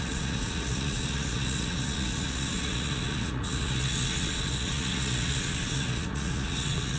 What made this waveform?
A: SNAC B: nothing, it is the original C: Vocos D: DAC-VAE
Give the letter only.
C